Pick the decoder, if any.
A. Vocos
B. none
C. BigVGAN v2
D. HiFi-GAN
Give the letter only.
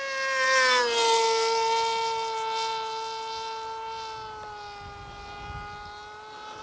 B